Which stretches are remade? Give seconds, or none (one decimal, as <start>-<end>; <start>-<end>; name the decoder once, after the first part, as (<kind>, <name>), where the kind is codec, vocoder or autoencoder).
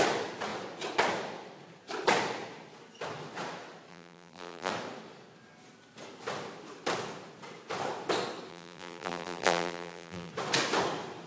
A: 3.9-4.7 (vocoder, BigVGAN v2); 8.5-10.3